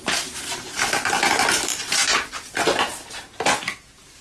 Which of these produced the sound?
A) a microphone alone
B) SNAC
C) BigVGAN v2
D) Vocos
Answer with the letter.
C